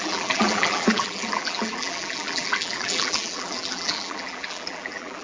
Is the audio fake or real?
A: fake